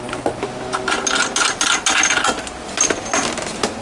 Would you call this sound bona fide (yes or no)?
yes